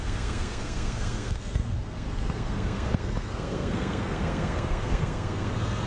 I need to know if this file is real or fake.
fake